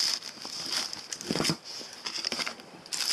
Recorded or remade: recorded